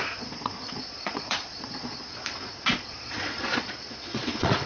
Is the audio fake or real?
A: fake